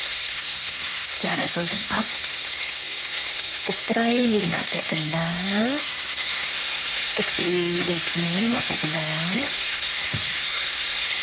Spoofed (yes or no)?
yes